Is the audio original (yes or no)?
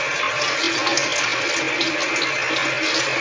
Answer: yes